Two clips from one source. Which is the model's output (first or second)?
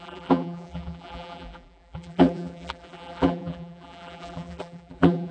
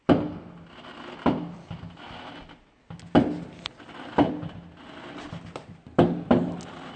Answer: first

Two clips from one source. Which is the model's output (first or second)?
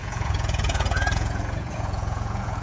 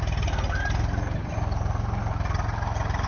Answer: first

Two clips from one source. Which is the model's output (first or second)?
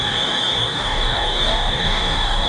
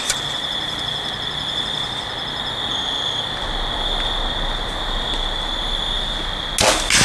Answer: first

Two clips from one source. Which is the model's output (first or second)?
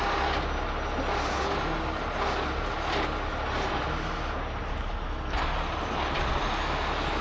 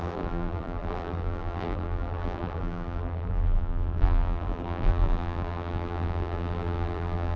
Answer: second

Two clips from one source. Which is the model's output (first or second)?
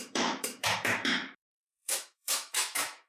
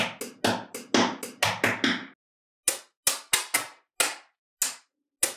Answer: first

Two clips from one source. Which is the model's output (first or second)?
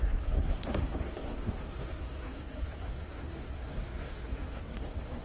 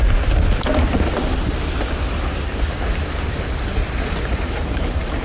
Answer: first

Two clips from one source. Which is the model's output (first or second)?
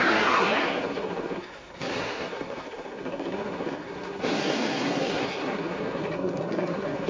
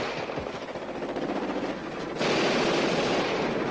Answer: first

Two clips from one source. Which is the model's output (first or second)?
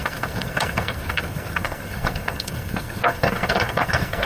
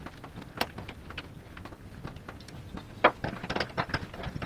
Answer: first